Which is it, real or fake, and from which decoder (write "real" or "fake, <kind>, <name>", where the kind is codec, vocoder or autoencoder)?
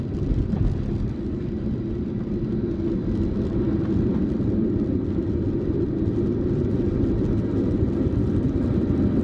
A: real